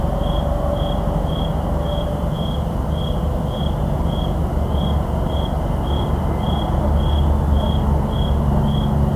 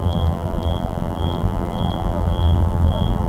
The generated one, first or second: second